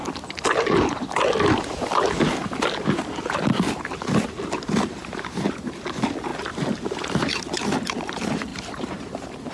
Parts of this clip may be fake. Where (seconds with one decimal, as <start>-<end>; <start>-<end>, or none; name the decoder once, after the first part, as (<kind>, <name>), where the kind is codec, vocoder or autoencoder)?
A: 5.0-5.8 (vocoder, BigVGAN v2); 6.3-7.4; 8.5-9.5